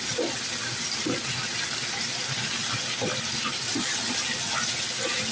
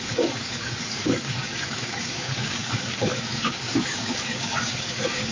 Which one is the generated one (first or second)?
second